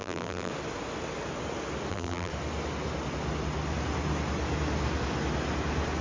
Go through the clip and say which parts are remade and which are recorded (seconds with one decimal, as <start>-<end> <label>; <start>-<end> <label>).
0.0-0.5 remade; 0.5-1.9 recorded; 1.9-2.3 remade; 2.3-6.0 recorded